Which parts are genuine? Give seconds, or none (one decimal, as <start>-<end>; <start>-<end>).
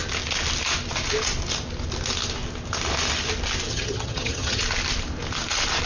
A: 0.0-3.7; 4.6-5.9